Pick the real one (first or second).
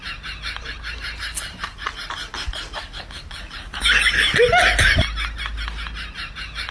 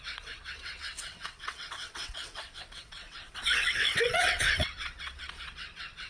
first